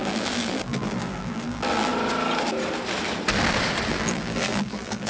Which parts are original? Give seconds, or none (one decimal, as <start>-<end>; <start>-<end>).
1.9-3.9